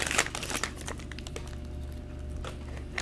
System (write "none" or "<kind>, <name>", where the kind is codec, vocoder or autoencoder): none